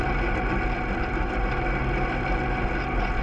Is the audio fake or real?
real